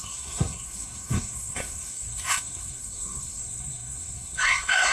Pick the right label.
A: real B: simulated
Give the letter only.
B